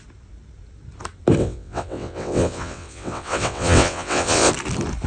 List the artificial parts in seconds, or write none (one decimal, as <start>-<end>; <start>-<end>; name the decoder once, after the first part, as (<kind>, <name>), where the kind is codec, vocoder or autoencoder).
1.4-4.5 (vocoder, WaveNeXt)